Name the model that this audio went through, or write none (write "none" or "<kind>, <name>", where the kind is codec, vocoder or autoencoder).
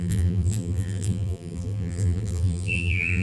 vocoder, BigVGAN v2